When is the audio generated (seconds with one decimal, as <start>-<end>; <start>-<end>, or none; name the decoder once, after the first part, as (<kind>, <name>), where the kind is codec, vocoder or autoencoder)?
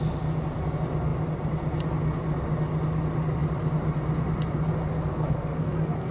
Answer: 5.1-6.1 (codec, SNAC)